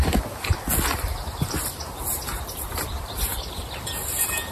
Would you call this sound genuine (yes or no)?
yes